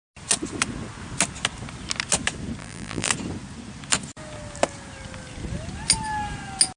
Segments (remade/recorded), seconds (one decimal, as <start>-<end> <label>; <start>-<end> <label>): 0.0-2.6 recorded; 2.6-3.1 remade; 3.1-6.8 recorded